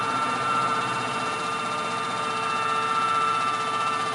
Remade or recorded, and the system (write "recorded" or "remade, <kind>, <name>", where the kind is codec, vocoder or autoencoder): remade, vocoder, BigVGAN v2